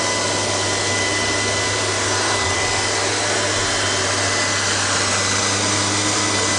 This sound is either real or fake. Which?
real